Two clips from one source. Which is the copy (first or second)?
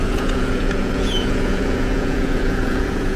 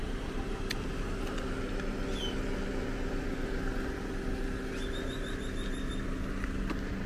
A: first